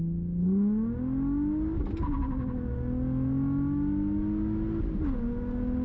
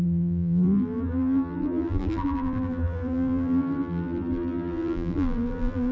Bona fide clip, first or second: first